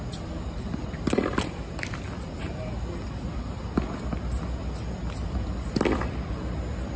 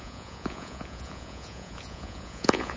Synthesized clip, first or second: second